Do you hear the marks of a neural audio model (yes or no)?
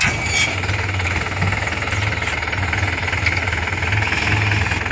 no